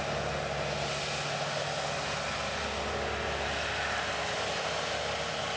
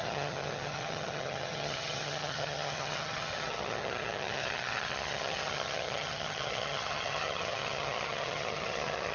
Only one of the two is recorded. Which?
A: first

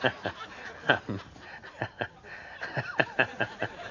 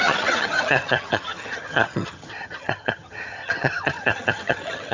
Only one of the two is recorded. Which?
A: first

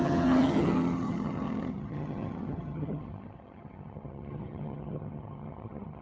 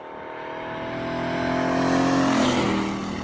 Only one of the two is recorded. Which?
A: second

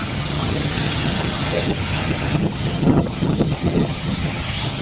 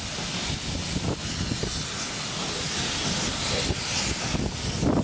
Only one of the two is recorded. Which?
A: second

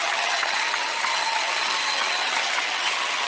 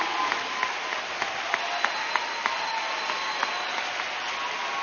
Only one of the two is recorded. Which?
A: second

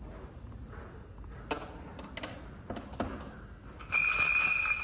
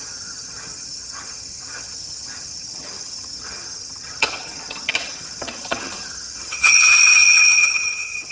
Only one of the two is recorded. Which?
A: first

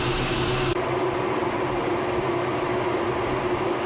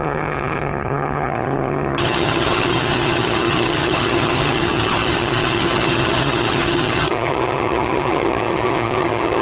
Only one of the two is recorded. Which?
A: first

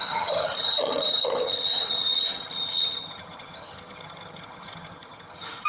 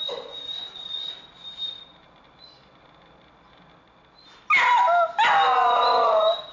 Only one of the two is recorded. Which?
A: second